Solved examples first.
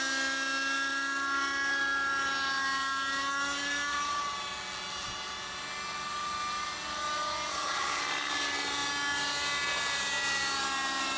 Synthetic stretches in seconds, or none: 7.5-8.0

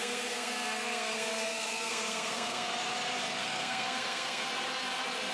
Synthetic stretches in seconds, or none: 0.0-2.7; 3.4-4.5

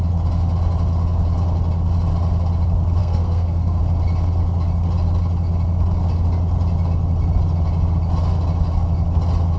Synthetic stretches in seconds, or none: 3.0-3.8

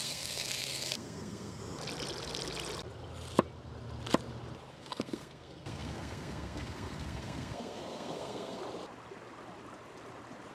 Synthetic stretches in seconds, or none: 0.0-1.6; 4.7-8.6

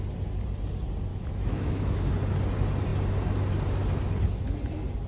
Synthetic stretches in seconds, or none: 1.1-2.1

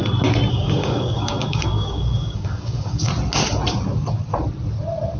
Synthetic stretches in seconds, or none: 0.5-3.1